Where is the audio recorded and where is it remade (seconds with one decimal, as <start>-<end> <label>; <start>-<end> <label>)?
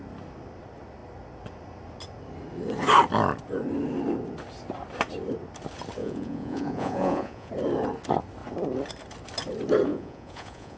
0.0-6.0 recorded; 6.0-7.5 remade; 7.5-9.9 recorded; 9.9-10.8 remade